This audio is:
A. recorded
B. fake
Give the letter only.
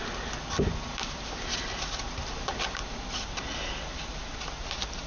B